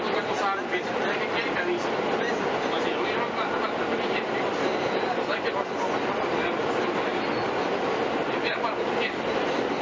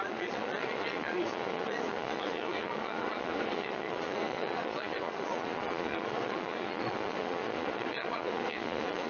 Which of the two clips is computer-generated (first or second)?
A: second